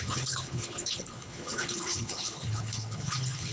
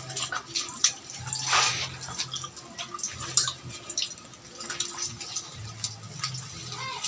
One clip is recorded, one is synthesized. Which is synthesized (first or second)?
first